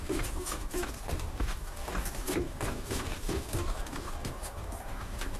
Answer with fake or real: fake